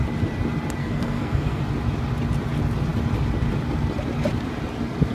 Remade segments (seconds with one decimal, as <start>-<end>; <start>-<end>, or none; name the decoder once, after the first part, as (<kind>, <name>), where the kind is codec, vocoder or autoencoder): 0.8-1.6 (codec, SNAC)